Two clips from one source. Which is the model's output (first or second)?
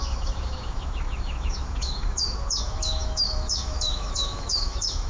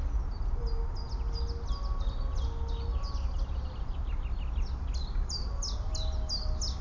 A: first